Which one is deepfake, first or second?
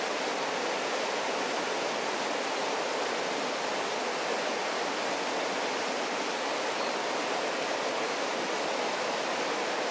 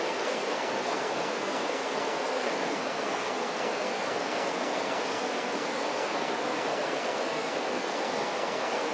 second